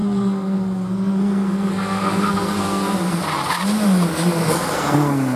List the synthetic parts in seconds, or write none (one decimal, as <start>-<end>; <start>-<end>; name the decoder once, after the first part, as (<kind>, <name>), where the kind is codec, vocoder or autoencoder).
0.0-3.2 (codec, SNAC); 4.1-5.4